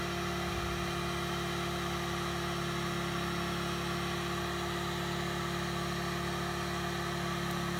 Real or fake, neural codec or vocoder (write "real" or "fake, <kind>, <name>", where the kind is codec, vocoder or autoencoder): real